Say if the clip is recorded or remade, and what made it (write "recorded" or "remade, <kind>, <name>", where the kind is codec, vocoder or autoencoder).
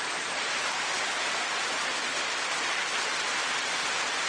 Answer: recorded